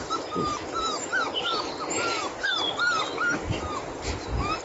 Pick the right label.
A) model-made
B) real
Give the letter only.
B